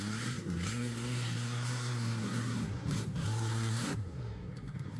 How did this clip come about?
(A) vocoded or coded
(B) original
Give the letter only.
A